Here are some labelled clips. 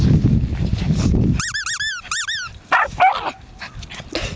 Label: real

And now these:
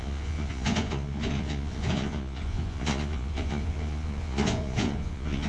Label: fake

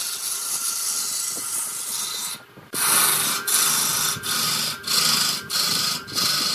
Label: real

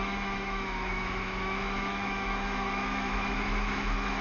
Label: fake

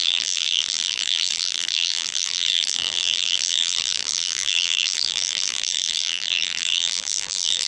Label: fake